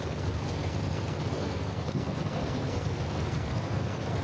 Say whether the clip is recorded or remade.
remade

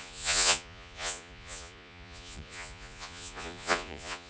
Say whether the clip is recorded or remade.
remade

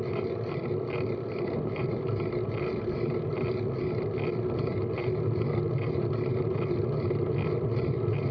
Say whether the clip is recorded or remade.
recorded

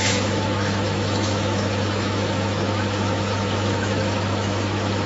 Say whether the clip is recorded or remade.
remade